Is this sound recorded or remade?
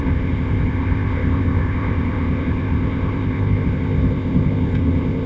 remade